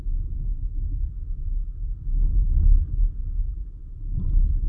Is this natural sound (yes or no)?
yes